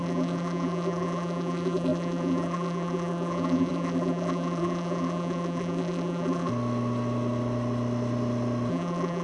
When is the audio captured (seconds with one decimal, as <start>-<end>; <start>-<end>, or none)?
6.5-8.7